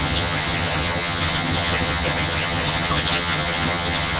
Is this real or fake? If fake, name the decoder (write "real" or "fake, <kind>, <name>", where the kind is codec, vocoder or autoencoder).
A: fake, vocoder, HiFi-GAN